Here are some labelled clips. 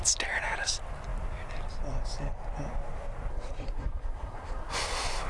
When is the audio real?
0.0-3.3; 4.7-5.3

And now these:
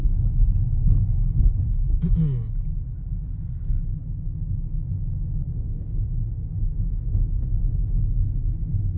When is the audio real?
0.0-5.5; 8.1-9.0

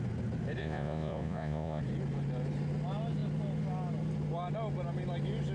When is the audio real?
0.0-0.6; 1.8-5.5